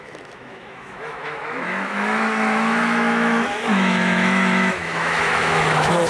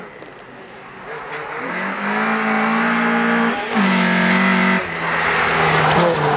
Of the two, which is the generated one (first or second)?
first